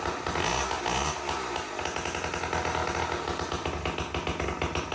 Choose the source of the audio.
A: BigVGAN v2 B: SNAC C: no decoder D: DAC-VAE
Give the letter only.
C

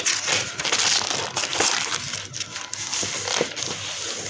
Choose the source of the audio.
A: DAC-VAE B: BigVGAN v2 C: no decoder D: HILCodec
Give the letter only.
C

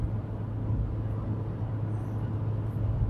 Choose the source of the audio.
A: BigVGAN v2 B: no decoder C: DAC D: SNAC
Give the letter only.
B